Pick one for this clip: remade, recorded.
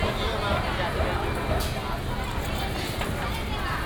recorded